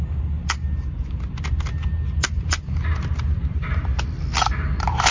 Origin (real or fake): real